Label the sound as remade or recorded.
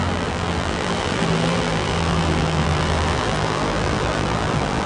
remade